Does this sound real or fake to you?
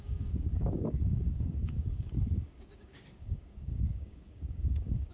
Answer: fake